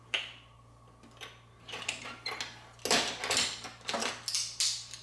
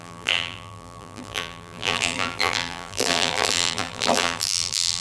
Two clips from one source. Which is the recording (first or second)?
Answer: first